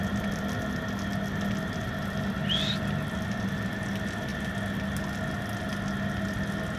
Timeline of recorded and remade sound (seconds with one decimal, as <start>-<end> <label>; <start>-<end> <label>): 0.0-6.8 recorded